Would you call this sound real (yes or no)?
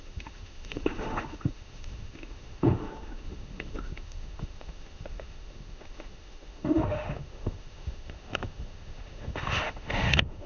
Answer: no